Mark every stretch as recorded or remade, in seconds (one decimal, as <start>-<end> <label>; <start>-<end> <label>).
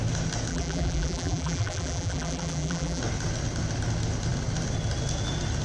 0.0-0.5 recorded; 0.5-3.0 remade; 3.0-5.6 recorded